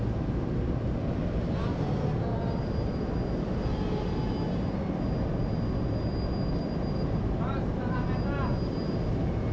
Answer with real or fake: real